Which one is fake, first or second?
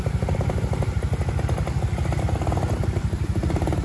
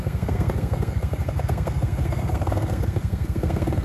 second